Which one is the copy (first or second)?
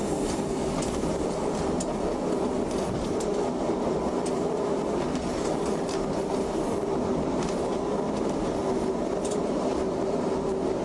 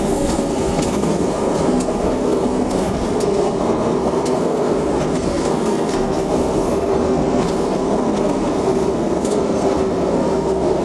second